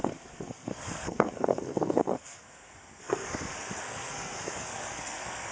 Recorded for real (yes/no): no